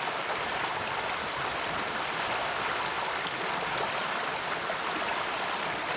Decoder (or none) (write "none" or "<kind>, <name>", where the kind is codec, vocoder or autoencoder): none